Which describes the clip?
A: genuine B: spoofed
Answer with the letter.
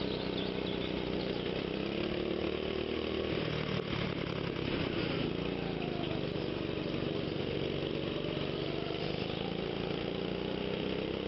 A